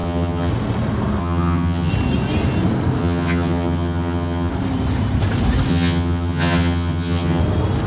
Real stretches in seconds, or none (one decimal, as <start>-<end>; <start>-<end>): 0.5-1.2; 1.9-3.0; 4.5-5.7; 7.4-7.9